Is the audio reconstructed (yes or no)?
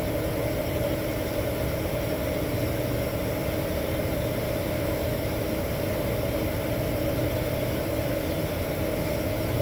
no